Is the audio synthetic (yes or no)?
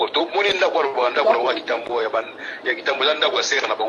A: yes